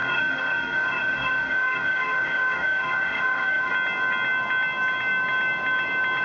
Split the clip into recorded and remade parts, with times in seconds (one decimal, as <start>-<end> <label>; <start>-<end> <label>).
0.0-3.7 remade; 3.7-6.2 recorded